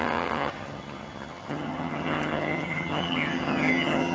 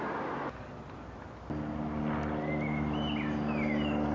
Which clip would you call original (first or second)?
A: second